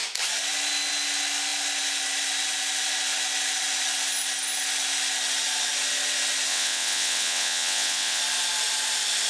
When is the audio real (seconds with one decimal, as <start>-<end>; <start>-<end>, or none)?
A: 0.0-6.5; 8.2-9.3